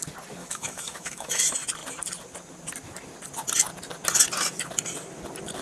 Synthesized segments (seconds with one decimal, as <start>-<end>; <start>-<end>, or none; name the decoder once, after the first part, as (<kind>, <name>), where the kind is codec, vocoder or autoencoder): 0.4-1.4 (autoencoder, DAC-VAE)